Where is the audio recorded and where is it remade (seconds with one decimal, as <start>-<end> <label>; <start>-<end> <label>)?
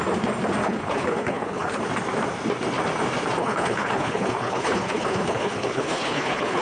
0.0-0.6 recorded; 0.6-1.8 remade; 1.8-3.4 recorded; 3.4-6.6 remade